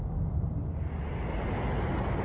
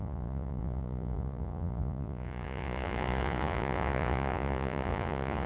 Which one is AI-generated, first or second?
second